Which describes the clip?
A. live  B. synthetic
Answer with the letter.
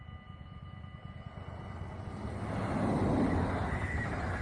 A